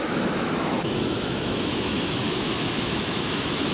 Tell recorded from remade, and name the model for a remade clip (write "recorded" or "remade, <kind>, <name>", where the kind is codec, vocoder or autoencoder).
remade, autoencoder, DAC-VAE